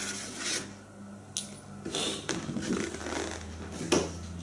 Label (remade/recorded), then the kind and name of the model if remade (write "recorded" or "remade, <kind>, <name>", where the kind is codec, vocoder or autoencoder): recorded